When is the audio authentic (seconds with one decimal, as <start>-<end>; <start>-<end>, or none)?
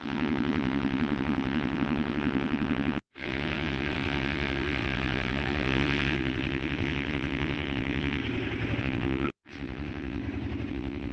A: 8.2-8.8; 10.2-10.7